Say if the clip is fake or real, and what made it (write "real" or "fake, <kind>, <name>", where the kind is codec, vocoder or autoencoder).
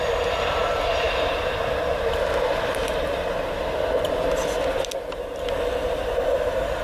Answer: real